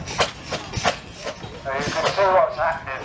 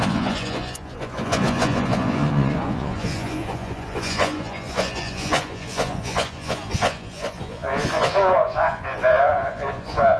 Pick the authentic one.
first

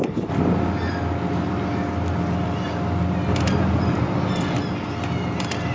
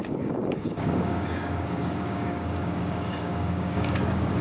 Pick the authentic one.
first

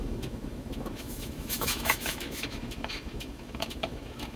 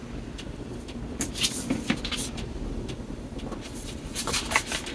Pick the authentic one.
second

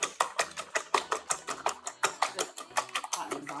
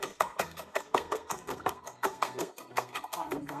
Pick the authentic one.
first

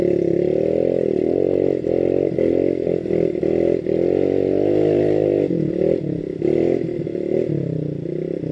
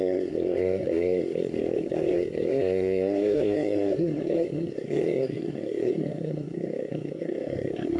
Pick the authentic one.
first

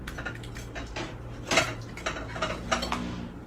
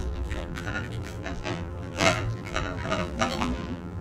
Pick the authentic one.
first